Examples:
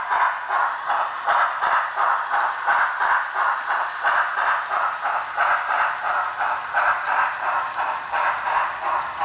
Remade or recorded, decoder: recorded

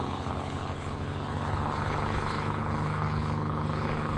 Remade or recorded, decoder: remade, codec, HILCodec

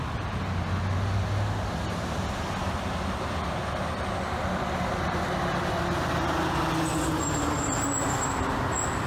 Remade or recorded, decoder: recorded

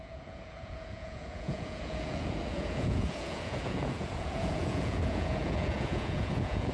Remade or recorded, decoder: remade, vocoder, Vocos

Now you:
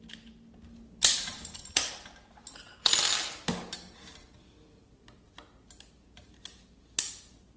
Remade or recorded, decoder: recorded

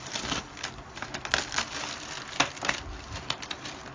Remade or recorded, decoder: recorded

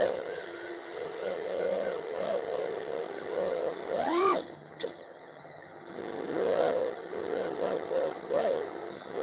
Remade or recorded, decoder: remade, vocoder, HiFi-GAN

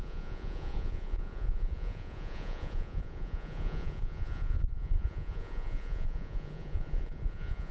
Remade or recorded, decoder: remade, vocoder, Vocos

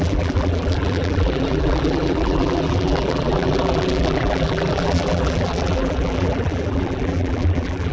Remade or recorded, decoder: remade, vocoder, BigVGAN v2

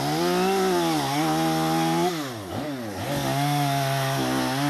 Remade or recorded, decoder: recorded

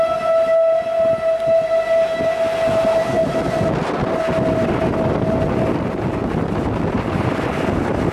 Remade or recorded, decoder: recorded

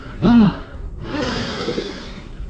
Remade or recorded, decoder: remade, codec, SNAC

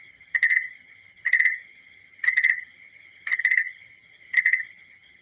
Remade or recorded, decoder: remade, vocoder, HiFi-GAN